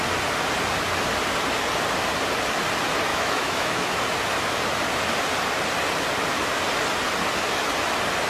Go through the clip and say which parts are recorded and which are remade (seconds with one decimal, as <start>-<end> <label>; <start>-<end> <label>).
0.0-3.1 recorded; 3.1-4.0 remade; 4.0-8.3 recorded